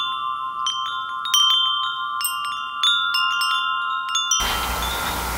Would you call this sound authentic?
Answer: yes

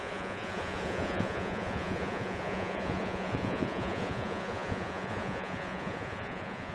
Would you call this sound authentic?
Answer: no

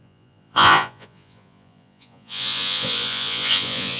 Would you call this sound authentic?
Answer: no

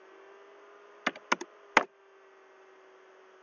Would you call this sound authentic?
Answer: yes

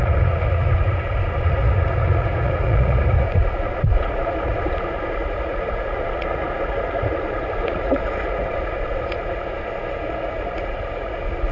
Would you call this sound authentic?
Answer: no